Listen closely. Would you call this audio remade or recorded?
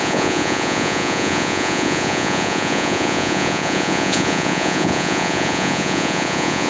remade